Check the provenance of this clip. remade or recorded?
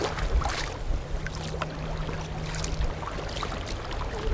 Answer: recorded